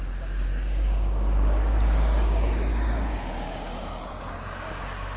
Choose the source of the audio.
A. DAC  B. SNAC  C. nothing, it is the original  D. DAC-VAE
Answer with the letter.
A